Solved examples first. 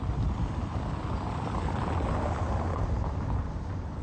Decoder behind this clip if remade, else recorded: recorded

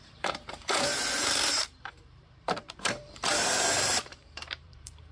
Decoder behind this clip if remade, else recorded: remade, vocoder, BigVGAN v2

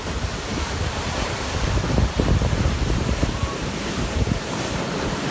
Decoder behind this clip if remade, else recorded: remade, vocoder, BigVGAN v2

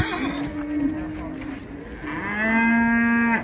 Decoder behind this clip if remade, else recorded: recorded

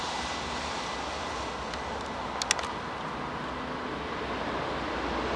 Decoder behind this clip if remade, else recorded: recorded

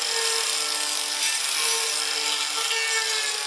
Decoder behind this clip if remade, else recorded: recorded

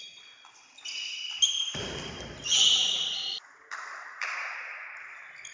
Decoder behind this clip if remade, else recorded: recorded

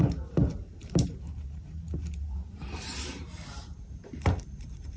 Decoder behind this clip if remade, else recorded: remade, vocoder, BigVGAN v2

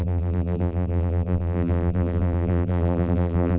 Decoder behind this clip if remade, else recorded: remade, vocoder, BigVGAN v2